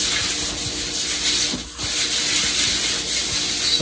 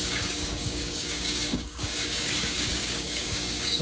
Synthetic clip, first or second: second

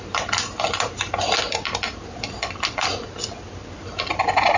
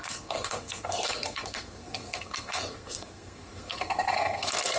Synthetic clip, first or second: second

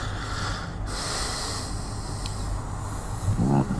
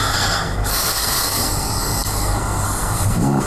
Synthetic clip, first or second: second